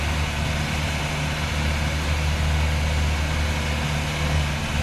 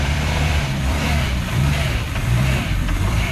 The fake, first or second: second